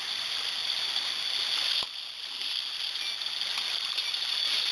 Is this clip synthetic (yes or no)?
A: no